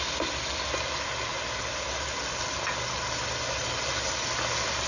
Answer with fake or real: real